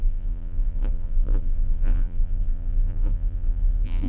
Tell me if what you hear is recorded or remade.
remade